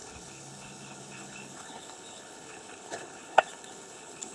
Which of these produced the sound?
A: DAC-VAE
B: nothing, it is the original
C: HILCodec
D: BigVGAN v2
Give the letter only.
C